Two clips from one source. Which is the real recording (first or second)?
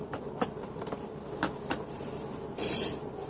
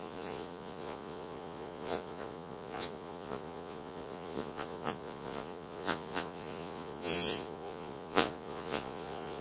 first